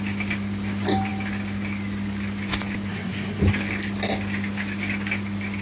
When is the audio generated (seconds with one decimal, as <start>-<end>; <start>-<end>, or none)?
2.9-3.4